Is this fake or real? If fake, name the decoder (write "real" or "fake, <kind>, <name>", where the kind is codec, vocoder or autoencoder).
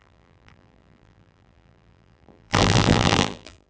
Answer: fake, vocoder, BigVGAN v2